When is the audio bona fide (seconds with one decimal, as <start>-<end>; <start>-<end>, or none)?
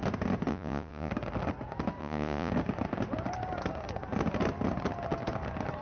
0.0-0.5; 1.1-2.0; 2.5-5.8